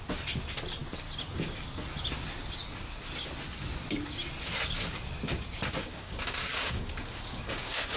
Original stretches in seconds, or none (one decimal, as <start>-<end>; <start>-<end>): 0.0-5.8